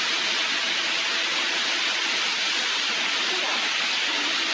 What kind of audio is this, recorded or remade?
recorded